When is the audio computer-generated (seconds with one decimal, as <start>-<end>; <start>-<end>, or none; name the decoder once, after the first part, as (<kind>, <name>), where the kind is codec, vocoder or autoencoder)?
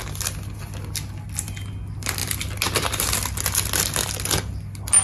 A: none